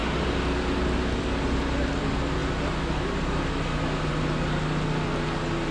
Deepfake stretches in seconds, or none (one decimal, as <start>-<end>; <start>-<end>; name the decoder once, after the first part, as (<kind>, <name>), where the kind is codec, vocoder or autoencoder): none